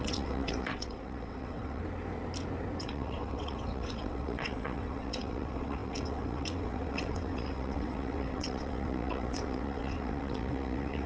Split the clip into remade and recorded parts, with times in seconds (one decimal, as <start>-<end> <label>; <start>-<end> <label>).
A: 0.0-1.8 remade; 1.8-2.8 recorded; 2.8-11.1 remade